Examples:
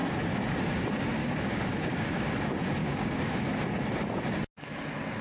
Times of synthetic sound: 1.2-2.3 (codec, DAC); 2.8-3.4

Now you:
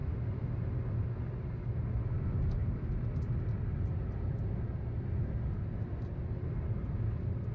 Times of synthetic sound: none

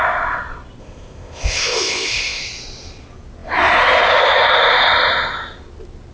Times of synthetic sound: 0.8-2.4 (codec, ZipCodec)

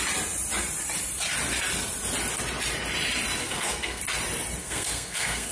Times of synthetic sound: 3.4-4.0 (codec, SNAC); 4.6-5.5

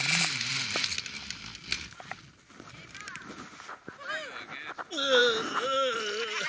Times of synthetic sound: none

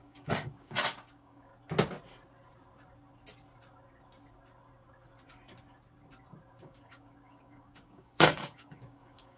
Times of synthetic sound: 0.0-1.5 (codec, DAC); 6.6-9.4

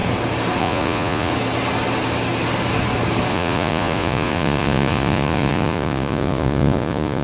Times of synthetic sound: 0.6-1.3 (vocoder, Vocos); 3.3-7.2